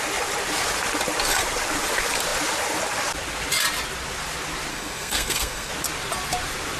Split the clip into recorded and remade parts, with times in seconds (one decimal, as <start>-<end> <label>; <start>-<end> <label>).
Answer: 0.0-4.7 recorded; 4.7-5.7 remade; 5.7-6.8 recorded